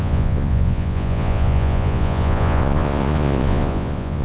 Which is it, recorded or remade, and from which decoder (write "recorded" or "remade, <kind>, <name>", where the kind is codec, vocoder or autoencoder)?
remade, vocoder, Vocos